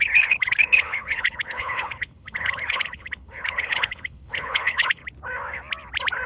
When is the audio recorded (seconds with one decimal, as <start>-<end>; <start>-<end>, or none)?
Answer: 5.0-6.3